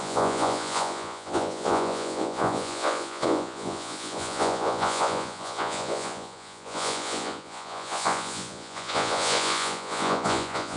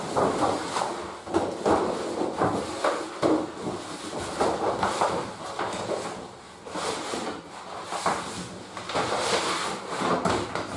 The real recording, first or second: second